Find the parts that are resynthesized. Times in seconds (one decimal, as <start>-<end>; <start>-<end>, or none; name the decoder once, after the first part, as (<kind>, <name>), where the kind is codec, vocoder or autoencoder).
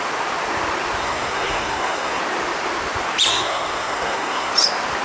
1.0-2.2 (codec, SNAC); 3.3-4.5